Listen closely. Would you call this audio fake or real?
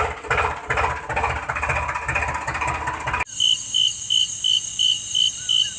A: real